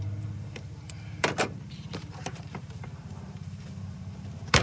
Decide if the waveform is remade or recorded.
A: remade